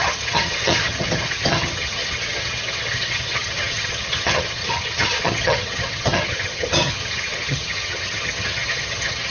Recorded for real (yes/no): no